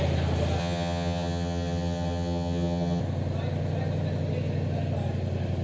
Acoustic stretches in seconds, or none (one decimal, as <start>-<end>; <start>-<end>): 0.0-0.6; 3.0-5.6

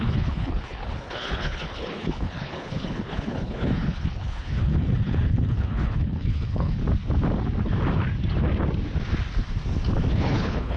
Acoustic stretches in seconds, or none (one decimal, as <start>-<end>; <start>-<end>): 6.8-10.1

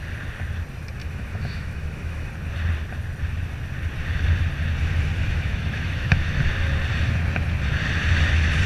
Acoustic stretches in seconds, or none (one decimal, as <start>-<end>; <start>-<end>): 0.0-1.0; 2.3-5.2; 6.3-8.7

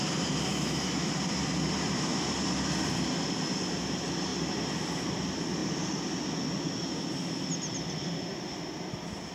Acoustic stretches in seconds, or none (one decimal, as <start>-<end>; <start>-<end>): 0.0-0.5; 1.1-9.3

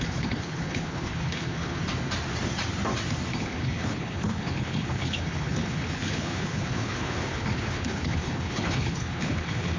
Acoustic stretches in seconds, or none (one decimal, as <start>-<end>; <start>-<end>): 1.8-3.4

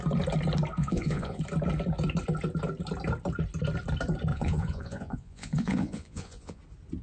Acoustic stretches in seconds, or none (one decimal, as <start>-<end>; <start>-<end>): 0.0-0.8; 1.4-4.3; 6.6-7.0

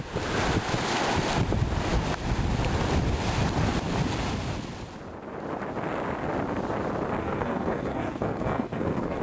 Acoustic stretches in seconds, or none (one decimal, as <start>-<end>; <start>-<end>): 0.0-7.2